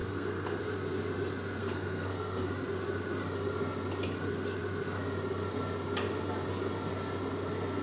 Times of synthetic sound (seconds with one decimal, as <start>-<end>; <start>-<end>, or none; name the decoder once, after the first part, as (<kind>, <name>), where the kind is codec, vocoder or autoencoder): 0.0-0.6 (codec, SNAC); 1.6-2.5